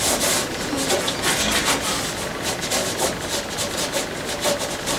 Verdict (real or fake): real